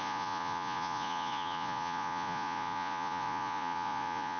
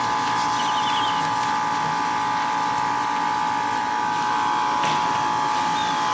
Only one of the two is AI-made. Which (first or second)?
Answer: first